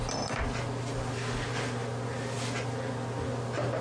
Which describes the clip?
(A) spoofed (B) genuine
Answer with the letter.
B